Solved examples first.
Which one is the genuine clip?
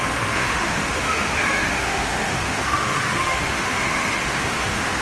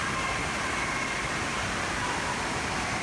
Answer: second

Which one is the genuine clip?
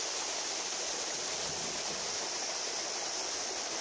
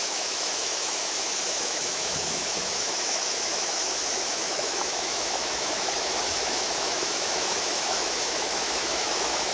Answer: first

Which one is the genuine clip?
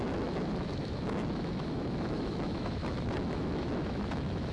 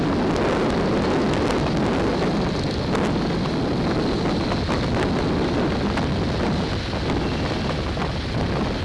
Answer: second